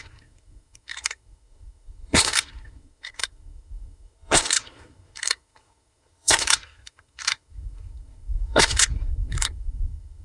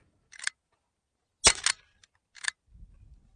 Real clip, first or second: second